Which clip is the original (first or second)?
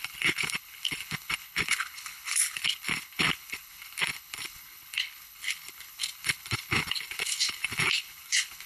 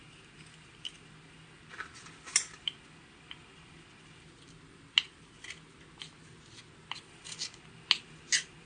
second